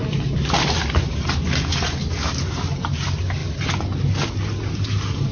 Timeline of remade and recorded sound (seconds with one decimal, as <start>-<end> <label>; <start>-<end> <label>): 0.0-5.3 recorded